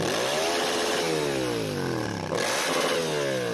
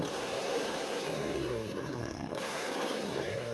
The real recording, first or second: first